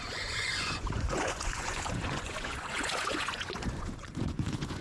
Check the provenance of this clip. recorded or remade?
remade